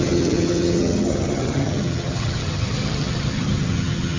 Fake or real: fake